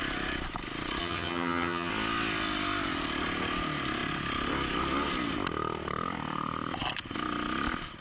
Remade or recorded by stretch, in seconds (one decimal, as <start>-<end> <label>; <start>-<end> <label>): 0.0-1.0 recorded; 1.0-1.9 remade; 1.9-8.0 recorded